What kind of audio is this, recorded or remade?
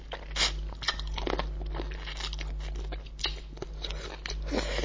recorded